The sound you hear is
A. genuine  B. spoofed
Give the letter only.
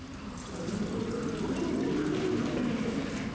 A